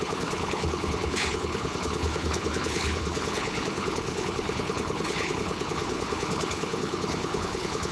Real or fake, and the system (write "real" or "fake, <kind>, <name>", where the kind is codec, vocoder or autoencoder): fake, codec, HILCodec